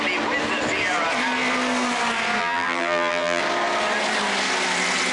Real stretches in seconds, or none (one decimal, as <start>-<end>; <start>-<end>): 0.0-2.4; 3.4-5.1

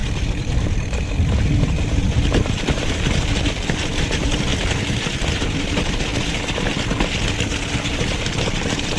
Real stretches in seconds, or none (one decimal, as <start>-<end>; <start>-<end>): 4.5-5.4; 6.1-7.8

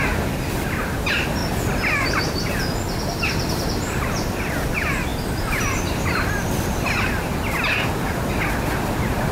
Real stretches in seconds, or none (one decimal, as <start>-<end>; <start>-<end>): 0.0-9.3